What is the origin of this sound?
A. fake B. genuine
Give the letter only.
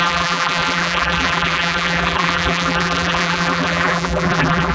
A